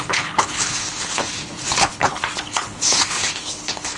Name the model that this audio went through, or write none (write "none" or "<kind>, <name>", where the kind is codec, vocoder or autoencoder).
codec, HILCodec